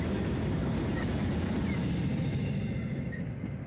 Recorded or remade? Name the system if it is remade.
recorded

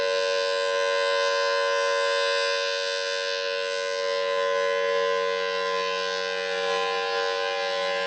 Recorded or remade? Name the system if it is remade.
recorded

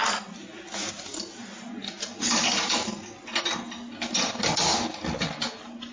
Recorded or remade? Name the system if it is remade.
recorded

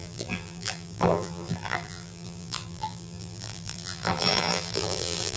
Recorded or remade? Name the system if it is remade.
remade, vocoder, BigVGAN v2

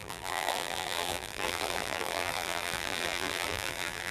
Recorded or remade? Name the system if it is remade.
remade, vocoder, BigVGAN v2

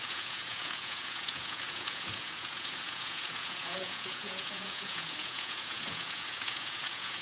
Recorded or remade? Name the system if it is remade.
remade, vocoder, Vocos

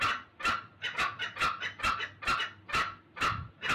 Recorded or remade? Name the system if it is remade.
recorded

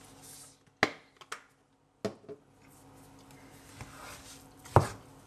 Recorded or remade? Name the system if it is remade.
recorded